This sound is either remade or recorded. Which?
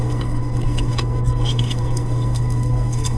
remade